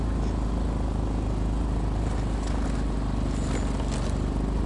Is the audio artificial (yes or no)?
no